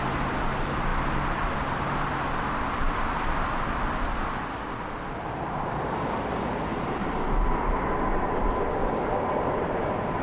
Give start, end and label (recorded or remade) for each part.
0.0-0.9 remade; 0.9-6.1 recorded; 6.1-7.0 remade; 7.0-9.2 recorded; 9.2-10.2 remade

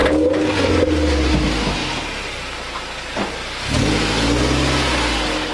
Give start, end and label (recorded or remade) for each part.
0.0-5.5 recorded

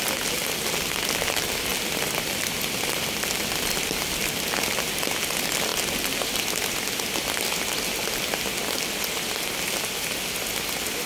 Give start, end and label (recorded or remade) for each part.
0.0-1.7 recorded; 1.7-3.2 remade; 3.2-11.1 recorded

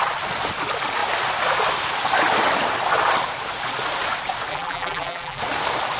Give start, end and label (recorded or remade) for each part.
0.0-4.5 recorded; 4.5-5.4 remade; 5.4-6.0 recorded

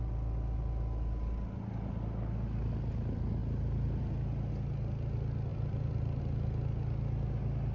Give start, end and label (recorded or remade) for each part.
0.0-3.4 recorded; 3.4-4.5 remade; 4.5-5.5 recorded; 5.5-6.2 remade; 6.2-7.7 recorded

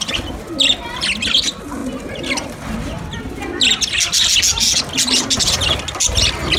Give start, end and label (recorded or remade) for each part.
0.0-6.6 recorded

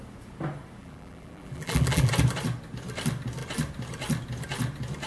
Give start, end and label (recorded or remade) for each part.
0.0-0.8 recorded; 0.8-2.1 remade; 2.1-5.1 recorded

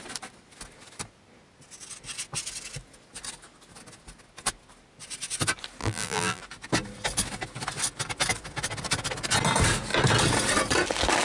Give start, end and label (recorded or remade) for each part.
0.0-5.8 recorded; 5.8-6.4 remade; 6.4-11.2 recorded